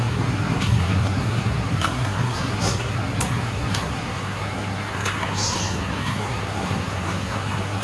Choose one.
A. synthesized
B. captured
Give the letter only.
A